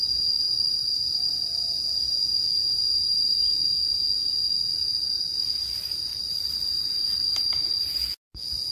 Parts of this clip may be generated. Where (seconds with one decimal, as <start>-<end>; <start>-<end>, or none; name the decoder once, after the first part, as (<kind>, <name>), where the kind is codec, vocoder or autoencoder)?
6.1-6.6 (vocoder, BigVGAN v2)